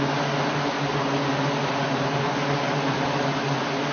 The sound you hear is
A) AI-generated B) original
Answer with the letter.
B